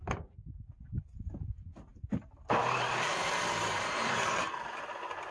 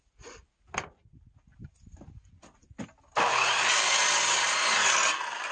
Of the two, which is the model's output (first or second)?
first